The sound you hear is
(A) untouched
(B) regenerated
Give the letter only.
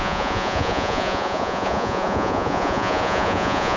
B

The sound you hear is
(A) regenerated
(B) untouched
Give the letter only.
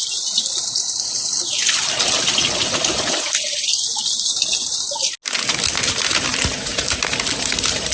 B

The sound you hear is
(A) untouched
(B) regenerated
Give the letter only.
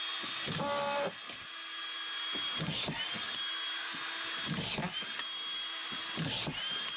A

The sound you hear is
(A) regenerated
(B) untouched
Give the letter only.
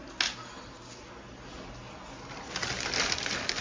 B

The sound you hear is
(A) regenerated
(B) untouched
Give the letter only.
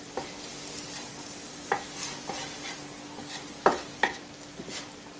B